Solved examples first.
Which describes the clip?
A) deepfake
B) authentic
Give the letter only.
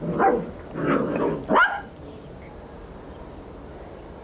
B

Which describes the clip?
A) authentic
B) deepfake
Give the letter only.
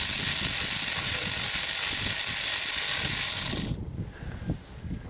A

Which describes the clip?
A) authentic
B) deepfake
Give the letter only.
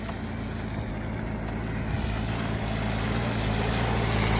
A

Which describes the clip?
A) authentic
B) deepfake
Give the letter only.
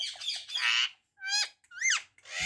A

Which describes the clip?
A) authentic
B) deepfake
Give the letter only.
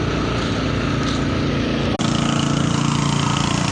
A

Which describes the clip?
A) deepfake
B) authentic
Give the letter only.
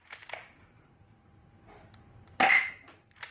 A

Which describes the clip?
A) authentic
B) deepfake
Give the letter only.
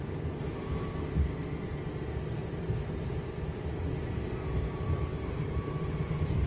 B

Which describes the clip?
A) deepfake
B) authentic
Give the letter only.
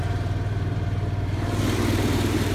A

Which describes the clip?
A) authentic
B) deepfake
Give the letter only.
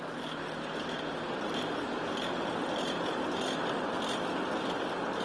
A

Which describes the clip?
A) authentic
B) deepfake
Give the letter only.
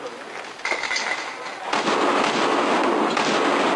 A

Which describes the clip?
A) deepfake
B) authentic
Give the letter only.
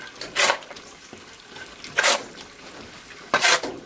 B